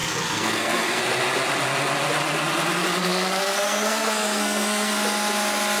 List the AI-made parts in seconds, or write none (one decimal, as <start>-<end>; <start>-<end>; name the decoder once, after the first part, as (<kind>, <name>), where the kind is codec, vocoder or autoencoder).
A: 0.0-1.0 (codec, SNAC); 3.0-4.9